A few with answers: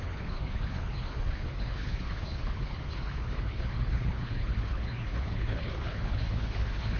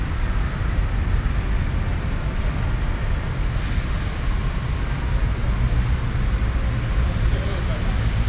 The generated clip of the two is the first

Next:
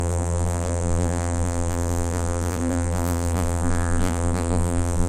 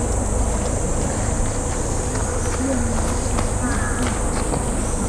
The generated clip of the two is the first